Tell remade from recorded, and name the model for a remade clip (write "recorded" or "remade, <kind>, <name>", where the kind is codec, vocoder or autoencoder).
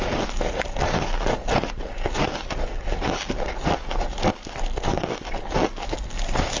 recorded